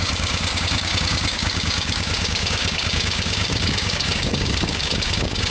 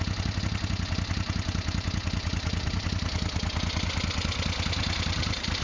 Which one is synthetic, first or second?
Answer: first